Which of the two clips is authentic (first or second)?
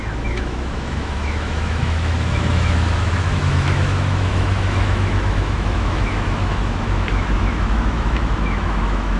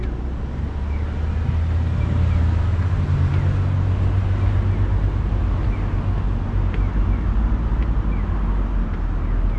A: second